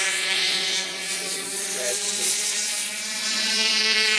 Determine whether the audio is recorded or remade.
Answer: remade